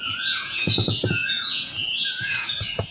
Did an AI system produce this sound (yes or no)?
yes